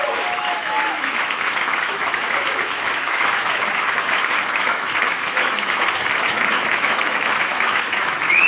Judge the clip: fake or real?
fake